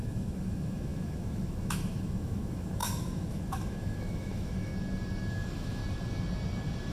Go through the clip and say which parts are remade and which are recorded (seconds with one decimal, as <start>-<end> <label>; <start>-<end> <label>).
0.0-4.7 remade; 4.7-5.3 recorded; 5.3-5.8 remade; 5.8-6.9 recorded

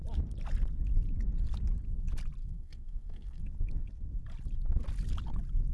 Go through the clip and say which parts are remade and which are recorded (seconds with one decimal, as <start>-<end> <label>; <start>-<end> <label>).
0.0-2.4 recorded; 2.4-3.4 remade; 3.4-5.7 recorded